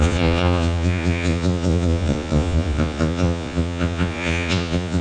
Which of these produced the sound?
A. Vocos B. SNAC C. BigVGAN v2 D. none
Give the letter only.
A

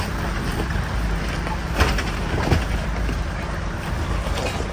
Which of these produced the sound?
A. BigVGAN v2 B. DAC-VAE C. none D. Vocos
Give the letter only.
C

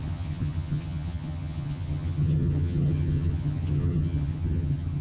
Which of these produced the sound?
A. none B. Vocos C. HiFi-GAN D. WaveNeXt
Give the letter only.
C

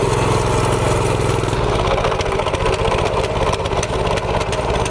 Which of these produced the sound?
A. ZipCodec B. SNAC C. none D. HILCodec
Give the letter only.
C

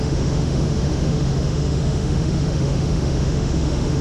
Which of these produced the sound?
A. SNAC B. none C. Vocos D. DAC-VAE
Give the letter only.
D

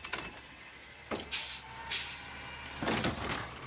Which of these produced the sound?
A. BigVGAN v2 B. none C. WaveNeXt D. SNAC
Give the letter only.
B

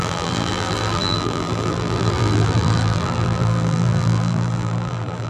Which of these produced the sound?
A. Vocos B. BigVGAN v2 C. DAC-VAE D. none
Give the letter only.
B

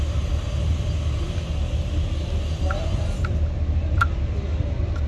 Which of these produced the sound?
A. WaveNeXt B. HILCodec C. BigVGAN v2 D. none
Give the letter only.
D